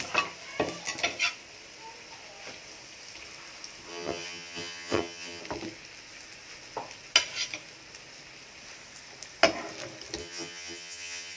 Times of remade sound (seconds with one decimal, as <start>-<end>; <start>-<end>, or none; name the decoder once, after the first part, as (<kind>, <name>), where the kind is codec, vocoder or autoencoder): 3.9-5.4 (vocoder, HiFi-GAN); 10.2-11.4

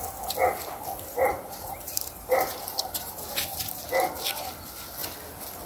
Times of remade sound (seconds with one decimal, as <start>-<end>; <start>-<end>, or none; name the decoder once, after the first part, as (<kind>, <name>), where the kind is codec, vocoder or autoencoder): 1.1-3.9 (vocoder, BigVGAN v2)

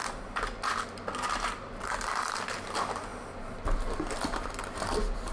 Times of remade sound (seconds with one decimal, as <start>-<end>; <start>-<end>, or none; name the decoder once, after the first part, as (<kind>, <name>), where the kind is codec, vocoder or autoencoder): none